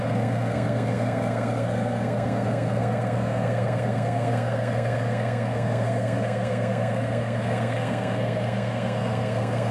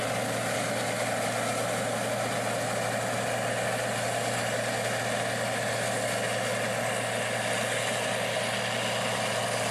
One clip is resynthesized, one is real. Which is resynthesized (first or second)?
first